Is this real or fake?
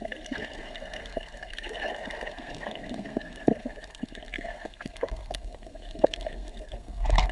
fake